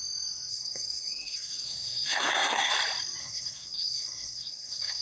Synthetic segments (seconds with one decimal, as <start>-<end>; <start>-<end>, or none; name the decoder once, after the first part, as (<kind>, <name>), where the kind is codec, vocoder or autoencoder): 0.5-2.7 (codec, SNAC); 3.2-5.0